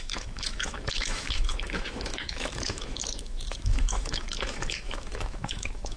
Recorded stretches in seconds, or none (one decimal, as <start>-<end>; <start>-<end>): none